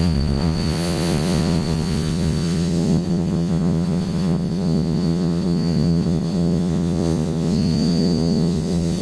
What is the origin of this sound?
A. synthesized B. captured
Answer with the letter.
A